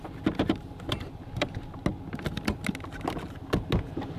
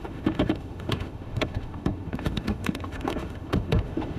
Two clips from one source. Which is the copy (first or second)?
second